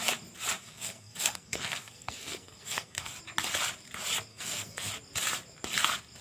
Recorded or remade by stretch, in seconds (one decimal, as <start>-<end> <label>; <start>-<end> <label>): 0.0-0.6 recorded; 0.6-3.1 remade; 3.1-4.3 recorded; 4.3-4.9 remade; 4.9-6.2 recorded